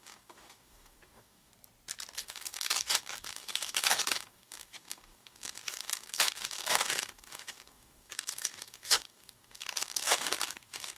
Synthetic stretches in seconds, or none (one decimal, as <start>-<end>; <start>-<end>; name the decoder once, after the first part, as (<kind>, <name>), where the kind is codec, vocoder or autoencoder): 0.0-1.5 (codec, DAC); 2.2-11.0